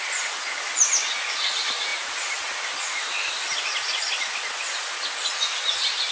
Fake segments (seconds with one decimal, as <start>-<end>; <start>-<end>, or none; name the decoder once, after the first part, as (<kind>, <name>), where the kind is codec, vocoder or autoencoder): none